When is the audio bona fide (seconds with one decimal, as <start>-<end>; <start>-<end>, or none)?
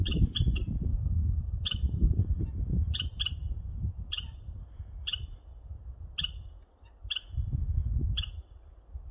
0.0-0.9; 2.4-9.1